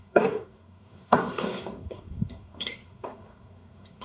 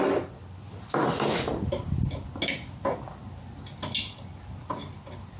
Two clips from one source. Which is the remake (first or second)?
first